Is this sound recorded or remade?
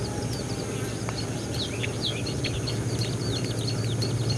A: recorded